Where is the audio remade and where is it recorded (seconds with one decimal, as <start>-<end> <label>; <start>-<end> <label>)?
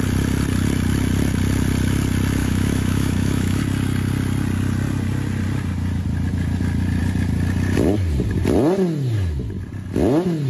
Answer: 0.0-2.4 recorded; 2.4-3.6 remade; 3.6-10.5 recorded